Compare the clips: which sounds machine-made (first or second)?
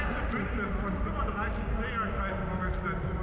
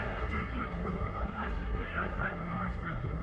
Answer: second